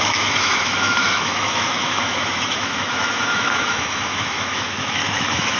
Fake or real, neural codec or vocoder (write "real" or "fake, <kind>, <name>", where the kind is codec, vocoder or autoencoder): fake, autoencoder, DAC-VAE